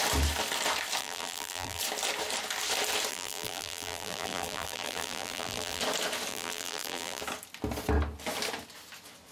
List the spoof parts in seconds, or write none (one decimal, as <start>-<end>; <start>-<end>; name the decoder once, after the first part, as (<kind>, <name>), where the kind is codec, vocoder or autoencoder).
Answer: 1.0-1.8 (vocoder, BigVGAN v2); 3.1-5.8; 6.3-7.2